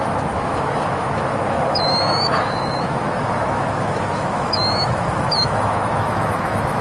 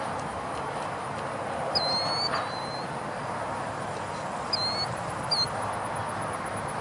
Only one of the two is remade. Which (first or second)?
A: first